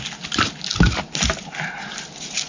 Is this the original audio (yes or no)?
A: yes